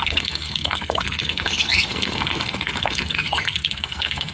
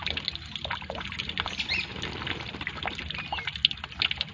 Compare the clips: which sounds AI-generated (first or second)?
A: first